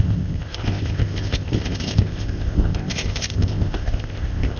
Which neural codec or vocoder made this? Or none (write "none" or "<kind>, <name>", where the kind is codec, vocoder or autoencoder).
codec, ZipCodec